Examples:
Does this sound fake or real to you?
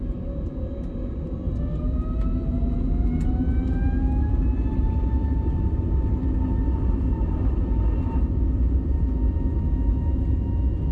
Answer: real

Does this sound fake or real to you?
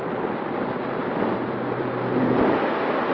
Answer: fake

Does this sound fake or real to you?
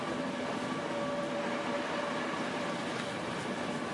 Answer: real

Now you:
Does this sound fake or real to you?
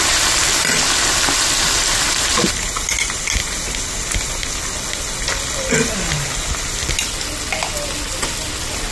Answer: real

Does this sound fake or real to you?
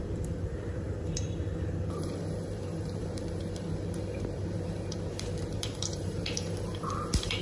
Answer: fake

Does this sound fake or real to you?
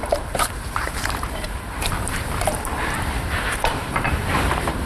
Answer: fake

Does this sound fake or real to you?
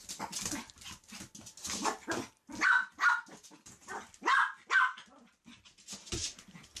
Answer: real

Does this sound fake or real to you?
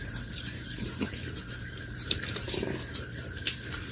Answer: fake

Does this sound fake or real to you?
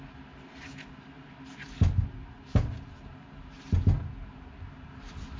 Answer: real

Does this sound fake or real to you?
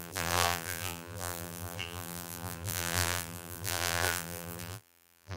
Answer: fake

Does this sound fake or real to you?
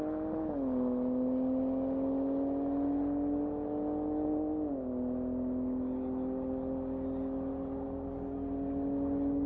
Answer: real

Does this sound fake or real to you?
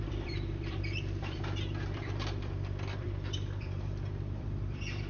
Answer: fake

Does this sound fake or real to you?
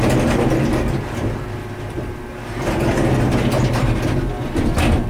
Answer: real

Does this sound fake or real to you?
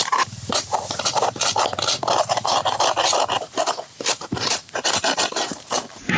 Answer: fake